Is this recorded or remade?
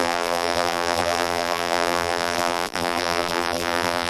remade